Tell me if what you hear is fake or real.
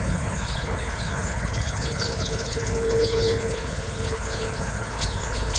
fake